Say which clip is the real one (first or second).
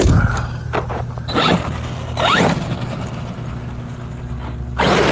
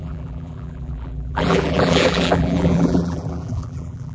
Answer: first